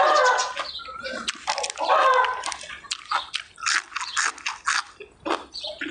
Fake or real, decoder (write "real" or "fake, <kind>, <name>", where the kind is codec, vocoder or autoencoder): real